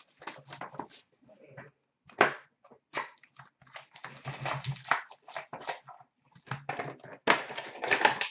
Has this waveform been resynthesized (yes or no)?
no